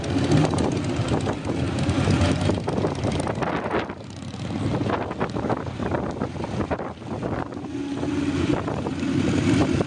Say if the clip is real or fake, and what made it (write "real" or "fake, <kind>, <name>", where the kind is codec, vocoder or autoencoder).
real